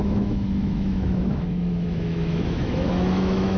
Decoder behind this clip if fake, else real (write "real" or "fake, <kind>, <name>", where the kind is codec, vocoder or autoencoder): fake, autoencoder, DAC-VAE